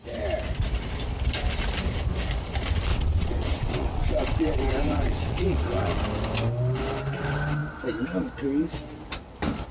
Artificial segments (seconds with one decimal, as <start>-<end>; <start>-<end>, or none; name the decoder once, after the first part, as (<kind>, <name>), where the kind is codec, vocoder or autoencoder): 2.9-6.0 (vocoder, WaveNeXt)